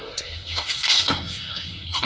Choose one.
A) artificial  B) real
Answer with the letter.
A